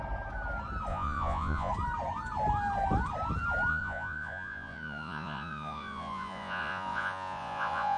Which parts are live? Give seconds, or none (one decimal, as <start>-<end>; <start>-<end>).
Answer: 0.0-0.9; 1.7-3.7